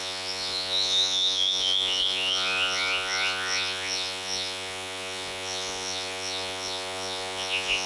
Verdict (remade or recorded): remade